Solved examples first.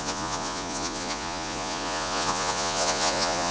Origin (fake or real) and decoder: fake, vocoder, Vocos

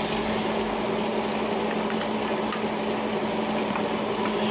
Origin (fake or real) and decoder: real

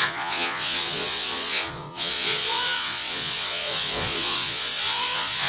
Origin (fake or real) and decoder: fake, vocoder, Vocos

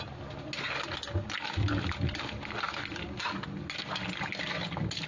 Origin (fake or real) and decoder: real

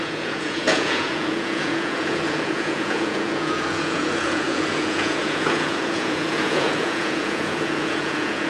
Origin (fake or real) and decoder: fake, vocoder, Vocos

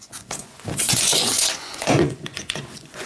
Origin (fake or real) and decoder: fake, vocoder, Vocos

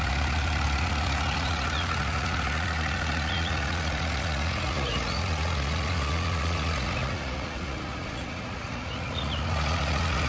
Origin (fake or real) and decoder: fake, vocoder, Vocos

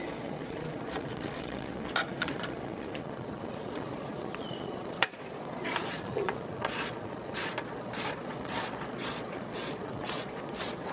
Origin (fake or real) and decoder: fake, vocoder, Vocos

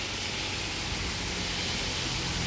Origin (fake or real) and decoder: real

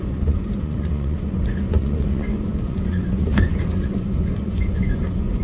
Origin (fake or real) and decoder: fake, vocoder, Vocos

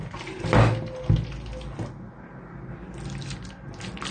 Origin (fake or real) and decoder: real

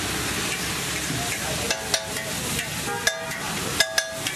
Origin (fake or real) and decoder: real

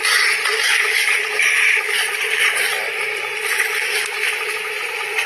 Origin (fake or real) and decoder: real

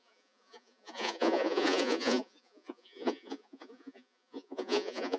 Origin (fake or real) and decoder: fake, vocoder, Vocos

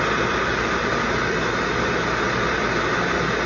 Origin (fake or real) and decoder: real